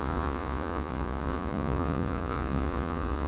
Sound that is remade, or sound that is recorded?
remade